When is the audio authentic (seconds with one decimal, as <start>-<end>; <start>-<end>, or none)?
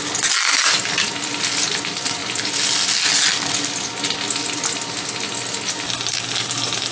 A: 0.0-6.9